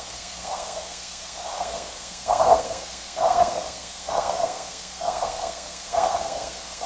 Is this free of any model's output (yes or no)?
no